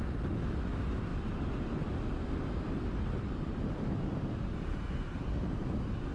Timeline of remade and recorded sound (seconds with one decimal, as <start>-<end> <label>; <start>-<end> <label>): 0.0-1.1 recorded; 1.1-4.8 remade; 4.8-6.1 recorded